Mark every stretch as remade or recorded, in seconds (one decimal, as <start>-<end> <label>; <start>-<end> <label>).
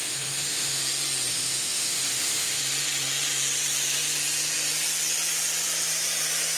0.0-0.8 remade; 0.8-1.3 recorded; 1.3-2.6 remade; 2.6-6.6 recorded